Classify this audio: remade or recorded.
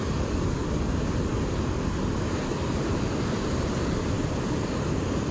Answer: recorded